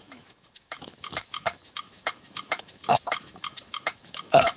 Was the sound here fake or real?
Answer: fake